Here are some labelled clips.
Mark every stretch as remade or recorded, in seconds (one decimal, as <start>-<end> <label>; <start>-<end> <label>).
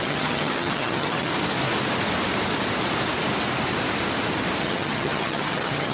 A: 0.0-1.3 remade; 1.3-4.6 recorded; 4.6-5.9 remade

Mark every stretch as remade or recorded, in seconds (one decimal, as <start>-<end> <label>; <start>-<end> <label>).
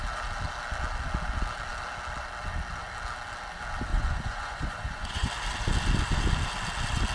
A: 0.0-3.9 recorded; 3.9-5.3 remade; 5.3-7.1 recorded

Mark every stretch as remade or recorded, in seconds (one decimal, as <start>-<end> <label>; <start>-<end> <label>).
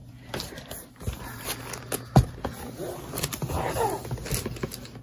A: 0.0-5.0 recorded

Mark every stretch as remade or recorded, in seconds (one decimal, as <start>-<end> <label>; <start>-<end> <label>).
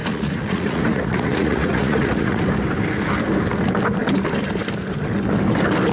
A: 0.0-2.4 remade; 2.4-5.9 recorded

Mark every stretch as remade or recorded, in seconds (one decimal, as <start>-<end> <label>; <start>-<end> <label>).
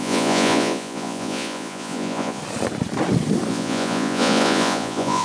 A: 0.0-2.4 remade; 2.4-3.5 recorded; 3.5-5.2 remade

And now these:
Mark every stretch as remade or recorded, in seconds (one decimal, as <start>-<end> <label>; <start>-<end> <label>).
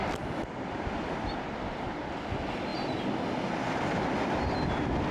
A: 0.0-5.1 recorded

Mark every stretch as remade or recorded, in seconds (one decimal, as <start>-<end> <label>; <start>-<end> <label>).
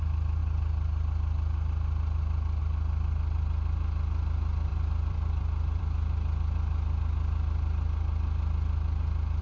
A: 0.0-4.7 recorded; 4.7-5.8 remade; 5.8-9.4 recorded